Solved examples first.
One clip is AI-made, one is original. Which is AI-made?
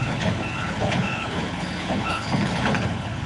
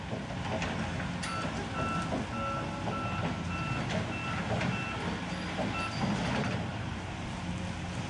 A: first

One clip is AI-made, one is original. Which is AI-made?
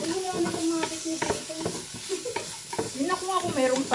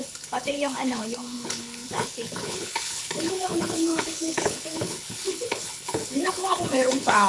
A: second